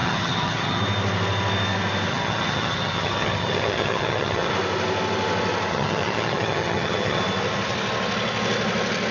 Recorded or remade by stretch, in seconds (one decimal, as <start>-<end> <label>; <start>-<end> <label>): 0.0-0.8 remade; 0.8-2.1 recorded; 2.1-4.5 remade; 4.5-5.7 recorded; 5.7-7.2 remade; 7.2-9.1 recorded